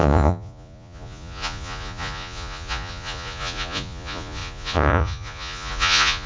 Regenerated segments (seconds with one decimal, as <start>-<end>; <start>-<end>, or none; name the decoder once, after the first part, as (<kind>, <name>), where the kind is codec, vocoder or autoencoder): 0.0-6.3 (vocoder, Vocos)